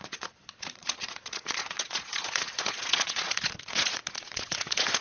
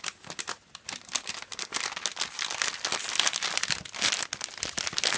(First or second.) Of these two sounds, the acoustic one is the second